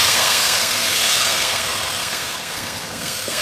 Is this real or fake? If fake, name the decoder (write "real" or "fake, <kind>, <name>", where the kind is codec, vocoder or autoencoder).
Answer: fake, codec, SNAC